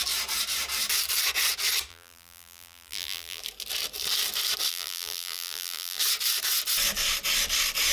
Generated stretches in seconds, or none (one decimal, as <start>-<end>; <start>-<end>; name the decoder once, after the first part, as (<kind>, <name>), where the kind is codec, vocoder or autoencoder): 1.9-3.4 (vocoder, BigVGAN v2); 4.7-6.0